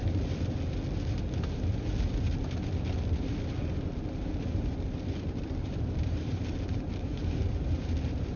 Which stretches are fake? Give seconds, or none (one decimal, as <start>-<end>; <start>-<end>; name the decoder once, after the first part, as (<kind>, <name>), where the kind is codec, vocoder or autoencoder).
5.0-8.4 (vocoder, BigVGAN v2)